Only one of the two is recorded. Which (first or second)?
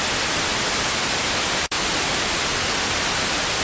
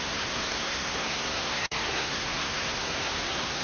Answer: first